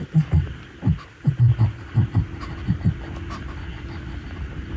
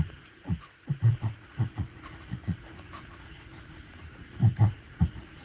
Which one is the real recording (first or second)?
first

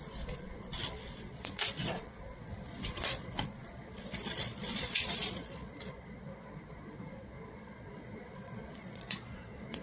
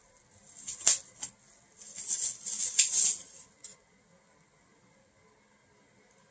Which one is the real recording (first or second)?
second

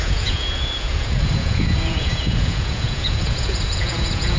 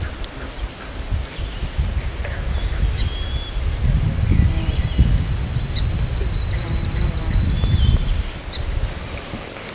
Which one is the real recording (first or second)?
second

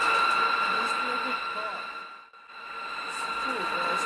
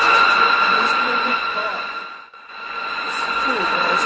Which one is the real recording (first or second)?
first